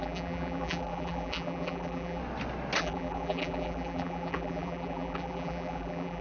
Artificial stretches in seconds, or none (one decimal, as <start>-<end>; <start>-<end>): 0.0-2.2; 2.8-6.2